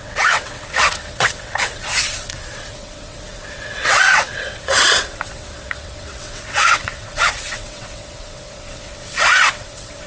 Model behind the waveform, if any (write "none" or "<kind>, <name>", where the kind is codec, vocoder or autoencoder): vocoder, WaveNeXt